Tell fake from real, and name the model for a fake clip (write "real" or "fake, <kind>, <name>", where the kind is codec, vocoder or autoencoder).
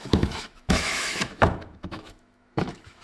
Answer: fake, autoencoder, DAC-VAE